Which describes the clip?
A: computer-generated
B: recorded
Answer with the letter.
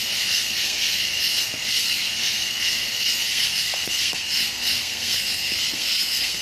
A